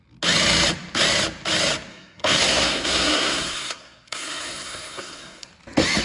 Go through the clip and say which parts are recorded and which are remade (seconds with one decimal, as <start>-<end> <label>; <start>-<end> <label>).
0.0-1.9 recorded; 1.9-5.5 remade; 5.5-6.0 recorded